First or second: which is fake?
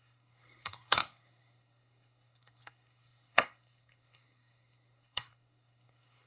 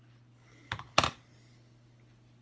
first